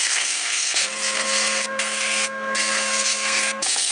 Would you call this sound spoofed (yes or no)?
yes